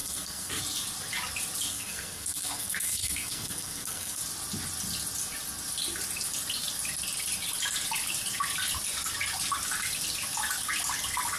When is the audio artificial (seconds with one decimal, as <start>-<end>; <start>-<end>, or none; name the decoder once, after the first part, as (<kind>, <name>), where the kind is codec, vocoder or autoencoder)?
0.0-0.6 (codec, SNAC); 1.7-4.2

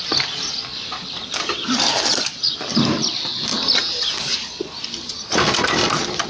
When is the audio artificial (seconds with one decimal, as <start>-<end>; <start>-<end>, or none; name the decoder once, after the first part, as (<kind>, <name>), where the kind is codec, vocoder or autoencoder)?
none

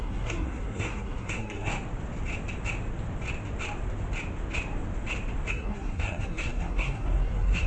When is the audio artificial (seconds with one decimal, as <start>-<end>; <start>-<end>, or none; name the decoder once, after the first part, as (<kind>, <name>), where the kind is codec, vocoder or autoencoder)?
0.0-1.7 (codec, SNAC); 5.5-7.7

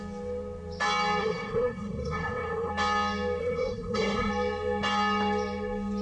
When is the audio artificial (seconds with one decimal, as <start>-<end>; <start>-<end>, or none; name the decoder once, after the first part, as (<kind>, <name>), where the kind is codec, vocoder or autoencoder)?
1.2-2.7 (codec, SNAC); 3.4-4.3

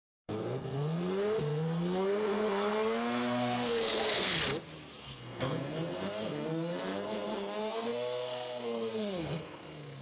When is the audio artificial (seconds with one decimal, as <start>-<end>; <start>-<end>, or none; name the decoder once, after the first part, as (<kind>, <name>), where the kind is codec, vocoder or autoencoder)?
0.0-4.3 (codec, SNAC); 5.0-10.0

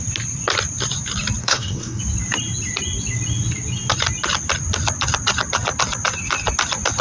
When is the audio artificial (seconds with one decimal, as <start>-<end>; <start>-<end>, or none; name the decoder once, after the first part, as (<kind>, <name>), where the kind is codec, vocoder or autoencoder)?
1.4-2.0 (codec, SNAC)